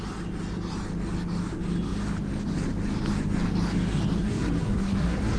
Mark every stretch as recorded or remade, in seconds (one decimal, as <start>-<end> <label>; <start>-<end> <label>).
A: 0.0-4.2 recorded; 4.2-5.4 remade